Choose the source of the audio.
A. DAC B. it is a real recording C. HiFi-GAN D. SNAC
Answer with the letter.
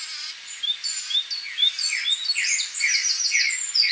B